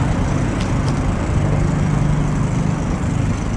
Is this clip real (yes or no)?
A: yes